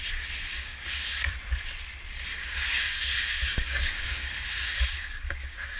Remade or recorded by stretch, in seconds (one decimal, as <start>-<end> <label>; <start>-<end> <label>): 0.0-0.5 recorded; 0.5-1.3 remade; 1.3-2.3 recorded; 2.3-5.8 remade

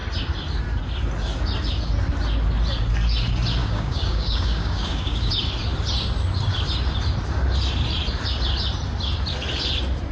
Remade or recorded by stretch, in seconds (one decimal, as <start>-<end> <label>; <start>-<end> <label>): 0.0-3.6 recorded; 3.6-5.3 remade; 5.3-10.1 recorded

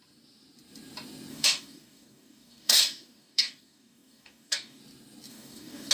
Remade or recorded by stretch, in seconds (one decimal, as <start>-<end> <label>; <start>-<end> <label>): 0.0-1.3 recorded; 1.3-4.8 remade; 4.8-5.3 recorded; 5.3-5.9 remade

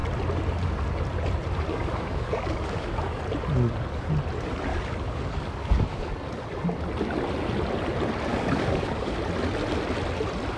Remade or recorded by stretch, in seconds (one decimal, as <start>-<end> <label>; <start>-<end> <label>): 0.0-1.7 recorded; 1.7-3.2 remade; 3.2-4.7 recorded; 4.7-6.1 remade; 6.1-8.3 recorded; 8.3-9.2 remade; 9.2-10.6 recorded

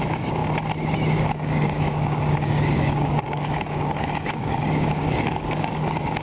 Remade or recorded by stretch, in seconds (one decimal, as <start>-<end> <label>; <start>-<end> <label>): 0.0-0.4 remade; 0.4-1.1 recorded; 1.1-6.2 remade

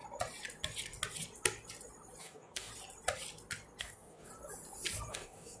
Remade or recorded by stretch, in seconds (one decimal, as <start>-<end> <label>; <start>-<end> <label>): 0.0-2.2 recorded; 2.2-2.7 remade; 2.7-3.8 recorded; 3.8-4.3 remade; 4.3-5.1 recorded; 5.1-5.6 remade

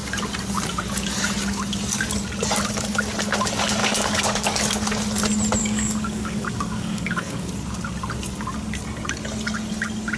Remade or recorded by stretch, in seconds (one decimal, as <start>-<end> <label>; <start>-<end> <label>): 0.0-3.8 recorded; 3.8-4.7 remade; 4.7-5.6 recorded; 5.6-7.5 remade; 7.5-10.2 recorded